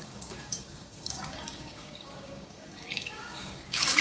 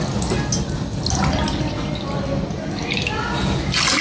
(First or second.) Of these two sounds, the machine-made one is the first